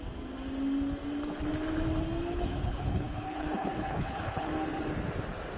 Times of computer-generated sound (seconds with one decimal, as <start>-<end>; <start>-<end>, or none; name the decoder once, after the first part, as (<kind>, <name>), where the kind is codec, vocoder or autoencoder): 2.3-4.5 (codec, HILCodec)